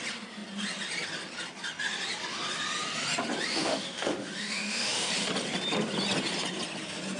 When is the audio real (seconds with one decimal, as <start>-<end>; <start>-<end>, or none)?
0.0-3.5; 5.1-7.2